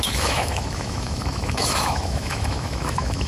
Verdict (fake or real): fake